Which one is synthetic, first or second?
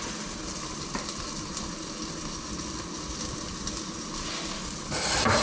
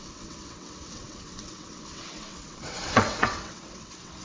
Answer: second